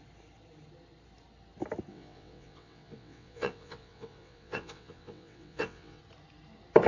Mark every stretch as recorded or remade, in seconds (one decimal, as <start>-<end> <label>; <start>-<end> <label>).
0.0-1.9 recorded; 1.9-6.0 remade; 6.0-6.9 recorded